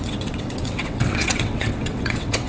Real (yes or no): no